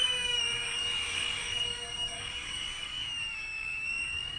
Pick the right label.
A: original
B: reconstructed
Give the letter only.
B